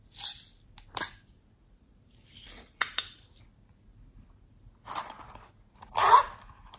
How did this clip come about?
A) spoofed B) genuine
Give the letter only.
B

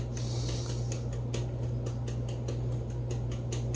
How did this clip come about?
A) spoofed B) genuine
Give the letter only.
B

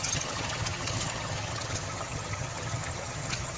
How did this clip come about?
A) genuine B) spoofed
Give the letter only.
B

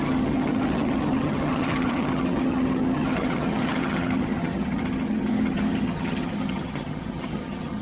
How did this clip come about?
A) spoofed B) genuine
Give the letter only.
A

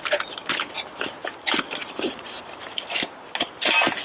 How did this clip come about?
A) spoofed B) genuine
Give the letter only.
B